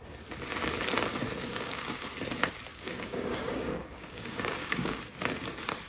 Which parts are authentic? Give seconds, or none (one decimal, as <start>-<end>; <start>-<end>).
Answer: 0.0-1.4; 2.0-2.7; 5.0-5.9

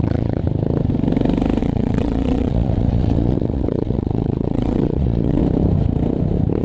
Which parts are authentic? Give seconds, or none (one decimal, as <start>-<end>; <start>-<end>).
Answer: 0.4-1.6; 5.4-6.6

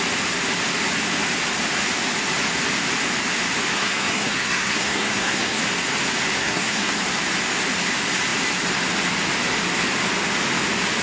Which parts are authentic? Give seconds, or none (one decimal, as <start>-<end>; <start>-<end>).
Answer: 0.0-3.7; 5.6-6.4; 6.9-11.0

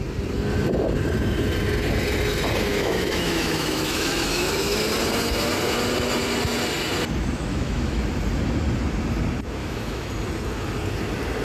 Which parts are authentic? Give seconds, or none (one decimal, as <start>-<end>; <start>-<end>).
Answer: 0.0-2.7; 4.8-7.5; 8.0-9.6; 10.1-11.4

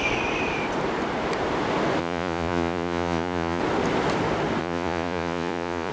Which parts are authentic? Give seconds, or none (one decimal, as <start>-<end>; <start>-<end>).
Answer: 0.0-2.0; 3.6-4.6